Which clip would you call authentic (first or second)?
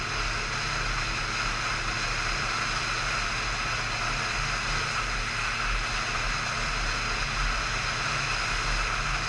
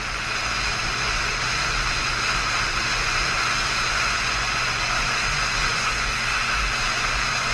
first